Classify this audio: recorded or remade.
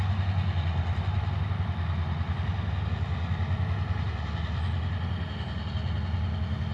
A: recorded